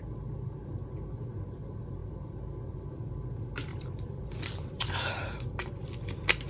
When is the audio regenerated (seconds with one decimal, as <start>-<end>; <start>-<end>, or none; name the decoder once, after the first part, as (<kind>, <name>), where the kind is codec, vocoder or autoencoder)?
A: 3.7-4.9 (vocoder, BigVGAN v2)